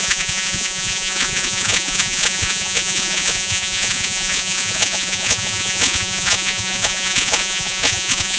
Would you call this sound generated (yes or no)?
yes